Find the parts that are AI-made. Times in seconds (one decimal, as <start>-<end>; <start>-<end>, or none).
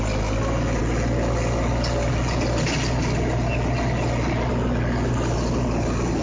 none